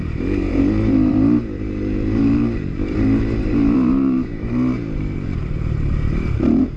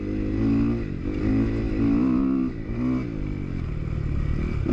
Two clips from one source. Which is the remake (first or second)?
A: first